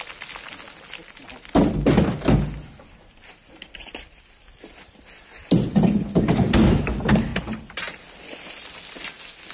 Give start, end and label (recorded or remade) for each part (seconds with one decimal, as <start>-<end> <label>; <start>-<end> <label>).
0.0-7.3 recorded; 7.3-7.8 remade; 7.8-9.5 recorded